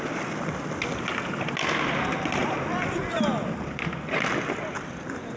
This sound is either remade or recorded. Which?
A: recorded